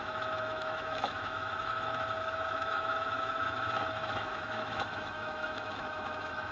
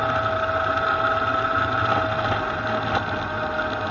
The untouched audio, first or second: second